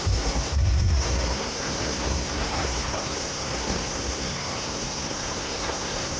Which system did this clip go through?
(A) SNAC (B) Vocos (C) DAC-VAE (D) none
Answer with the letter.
A